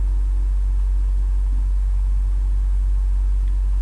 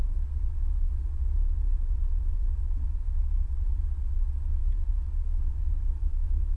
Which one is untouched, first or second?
first